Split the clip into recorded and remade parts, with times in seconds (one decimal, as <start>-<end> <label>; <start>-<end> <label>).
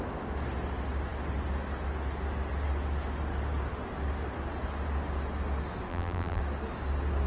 0.0-5.9 recorded; 5.9-6.4 remade; 6.4-7.3 recorded